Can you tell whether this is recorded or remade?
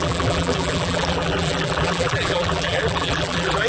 remade